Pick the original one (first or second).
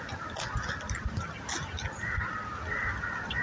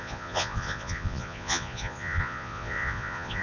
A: first